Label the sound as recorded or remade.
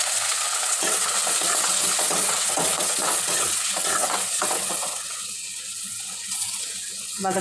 remade